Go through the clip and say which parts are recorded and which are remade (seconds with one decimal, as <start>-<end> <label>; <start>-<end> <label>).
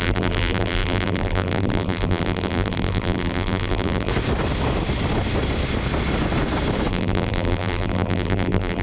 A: 0.0-4.1 remade; 4.1-6.9 recorded; 6.9-8.8 remade